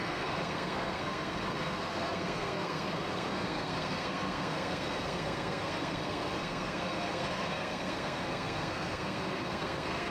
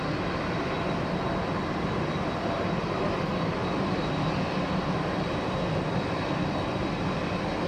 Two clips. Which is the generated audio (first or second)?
first